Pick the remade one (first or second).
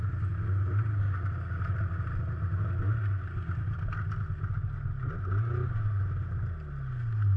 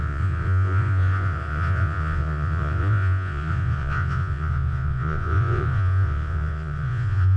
second